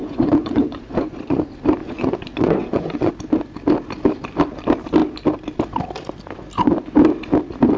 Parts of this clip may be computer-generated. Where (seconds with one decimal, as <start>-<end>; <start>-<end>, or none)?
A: 0.0-1.4; 1.8-3.1